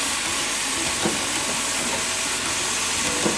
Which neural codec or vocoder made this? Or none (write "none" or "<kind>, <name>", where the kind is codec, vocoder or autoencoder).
none